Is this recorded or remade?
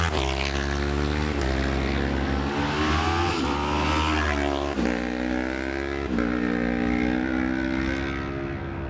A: recorded